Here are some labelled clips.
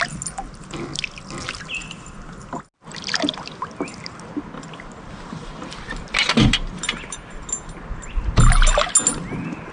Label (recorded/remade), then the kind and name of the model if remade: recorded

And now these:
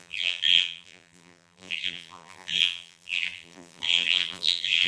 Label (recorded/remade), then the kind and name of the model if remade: remade, vocoder, BigVGAN v2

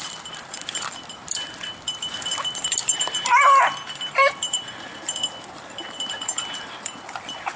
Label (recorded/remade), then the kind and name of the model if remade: remade, vocoder, BigVGAN v2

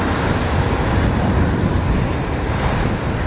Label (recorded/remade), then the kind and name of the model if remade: remade, vocoder, BigVGAN v2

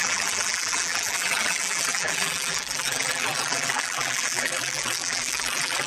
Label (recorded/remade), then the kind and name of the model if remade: remade, vocoder, BigVGAN v2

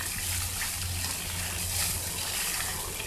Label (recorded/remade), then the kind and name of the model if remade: recorded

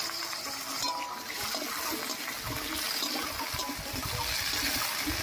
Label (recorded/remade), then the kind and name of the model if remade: recorded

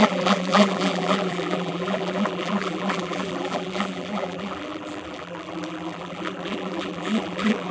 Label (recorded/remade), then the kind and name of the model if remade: remade, vocoder, BigVGAN v2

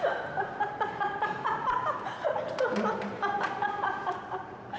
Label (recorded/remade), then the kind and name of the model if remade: remade, vocoder, BigVGAN v2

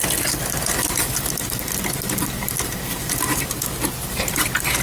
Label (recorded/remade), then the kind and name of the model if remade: recorded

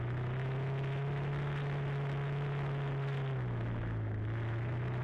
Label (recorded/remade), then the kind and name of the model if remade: recorded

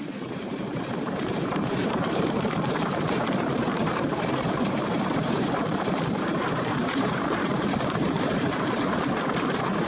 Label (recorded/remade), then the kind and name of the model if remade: remade, vocoder, BigVGAN v2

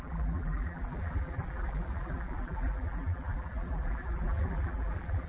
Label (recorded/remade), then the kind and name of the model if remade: remade, vocoder, BigVGAN v2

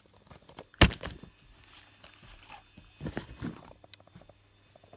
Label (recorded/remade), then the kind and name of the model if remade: recorded